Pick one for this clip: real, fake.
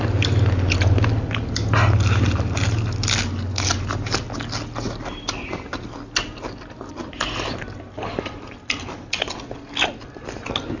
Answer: real